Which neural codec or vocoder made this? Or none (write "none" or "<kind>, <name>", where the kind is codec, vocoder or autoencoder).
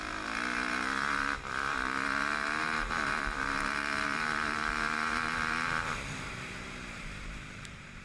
vocoder, BigVGAN v2